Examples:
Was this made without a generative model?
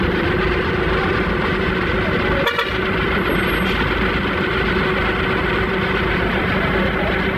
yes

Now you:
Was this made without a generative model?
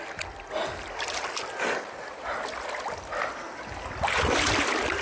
yes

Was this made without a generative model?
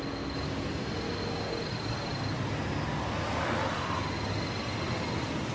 yes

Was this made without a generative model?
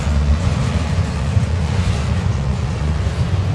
no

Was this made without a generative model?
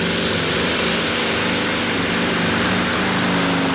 yes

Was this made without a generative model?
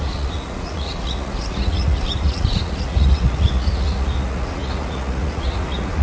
no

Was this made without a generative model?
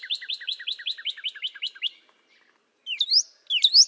yes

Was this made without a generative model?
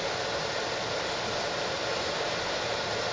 yes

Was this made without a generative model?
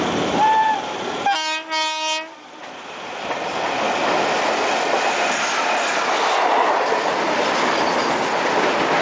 yes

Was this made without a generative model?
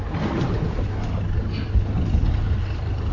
yes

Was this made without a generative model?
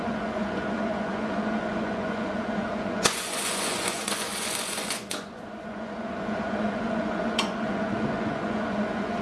no